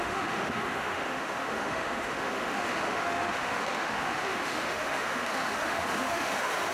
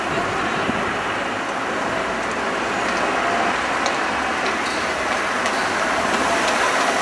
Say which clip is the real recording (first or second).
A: second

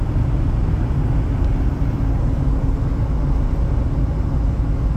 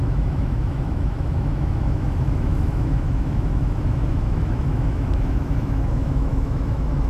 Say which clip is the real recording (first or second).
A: first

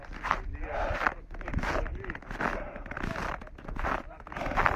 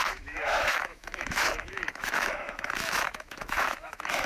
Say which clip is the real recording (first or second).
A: first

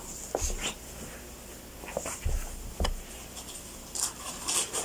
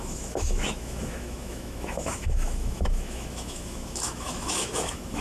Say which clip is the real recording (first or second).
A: first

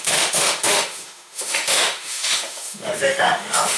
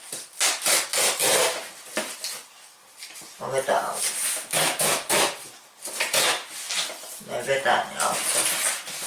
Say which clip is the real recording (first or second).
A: second